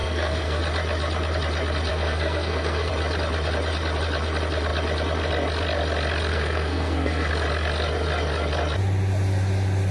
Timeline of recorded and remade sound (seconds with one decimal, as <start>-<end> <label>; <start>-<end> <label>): 0.0-0.6 remade; 0.6-1.9 recorded; 1.9-2.9 remade; 2.9-6.3 recorded; 6.3-7.3 remade; 7.3-9.9 recorded